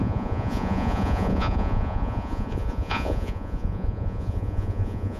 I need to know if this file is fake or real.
fake